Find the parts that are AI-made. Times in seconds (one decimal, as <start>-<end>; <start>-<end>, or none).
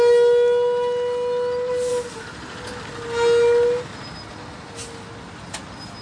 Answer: none